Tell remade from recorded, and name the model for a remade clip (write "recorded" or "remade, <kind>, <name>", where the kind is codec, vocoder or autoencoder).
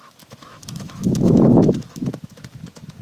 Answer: remade, autoencoder, DAC-VAE